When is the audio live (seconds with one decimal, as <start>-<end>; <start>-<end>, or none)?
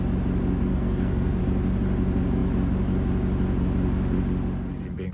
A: 0.0-0.7; 1.4-5.1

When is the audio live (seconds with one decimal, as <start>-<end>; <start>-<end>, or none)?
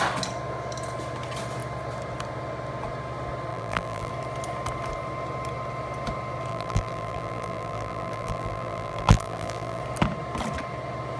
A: 0.0-3.5; 4.1-6.5; 9.8-11.2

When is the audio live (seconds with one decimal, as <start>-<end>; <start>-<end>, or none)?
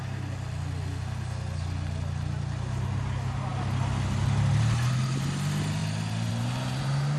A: 0.0-7.2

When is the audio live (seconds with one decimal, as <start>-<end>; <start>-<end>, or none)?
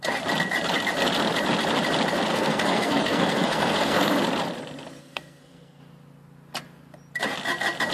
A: 0.0-2.3; 4.1-5.0; 5.8-7.9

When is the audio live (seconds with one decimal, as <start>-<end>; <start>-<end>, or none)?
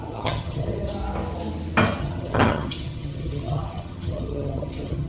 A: 1.0-2.0